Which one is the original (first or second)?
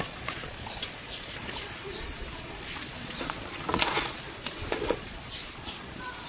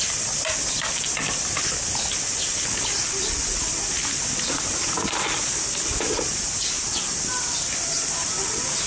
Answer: second